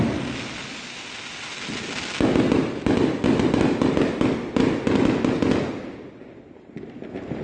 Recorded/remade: recorded